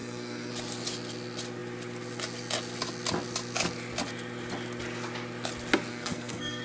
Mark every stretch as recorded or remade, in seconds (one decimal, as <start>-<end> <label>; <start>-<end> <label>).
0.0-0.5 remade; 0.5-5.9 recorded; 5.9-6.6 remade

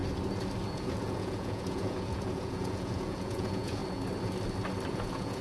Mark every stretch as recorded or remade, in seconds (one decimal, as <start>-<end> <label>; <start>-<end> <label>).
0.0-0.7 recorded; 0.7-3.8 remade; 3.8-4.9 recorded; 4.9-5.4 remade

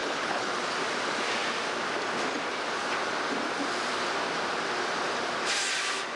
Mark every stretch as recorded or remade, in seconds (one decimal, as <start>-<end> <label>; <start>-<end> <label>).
0.0-0.5 remade; 0.5-6.2 recorded

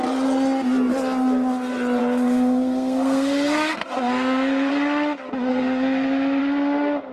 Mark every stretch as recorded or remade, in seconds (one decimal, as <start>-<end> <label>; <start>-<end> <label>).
0.0-2.0 recorded; 2.0-4.7 remade; 4.7-5.5 recorded; 5.5-6.4 remade; 6.4-7.1 recorded